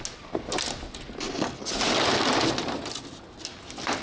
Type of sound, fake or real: real